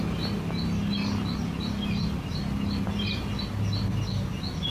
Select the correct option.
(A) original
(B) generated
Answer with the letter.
A